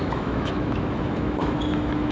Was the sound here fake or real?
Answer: fake